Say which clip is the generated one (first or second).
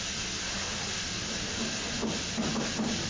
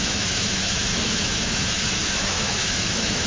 second